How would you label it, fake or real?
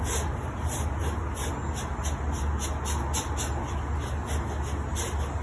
real